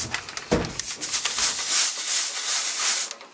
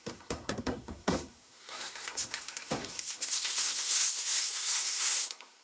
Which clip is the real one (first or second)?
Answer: first